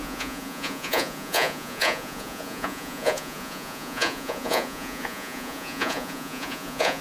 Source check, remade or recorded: remade